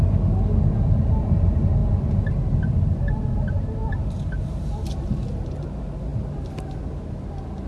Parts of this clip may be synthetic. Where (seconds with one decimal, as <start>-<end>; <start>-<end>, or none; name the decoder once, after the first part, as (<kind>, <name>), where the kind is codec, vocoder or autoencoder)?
none